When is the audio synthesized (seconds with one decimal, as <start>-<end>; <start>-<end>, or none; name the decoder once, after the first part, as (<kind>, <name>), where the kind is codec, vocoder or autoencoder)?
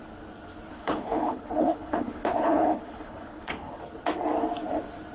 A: 0.7-3.8 (codec, HILCodec)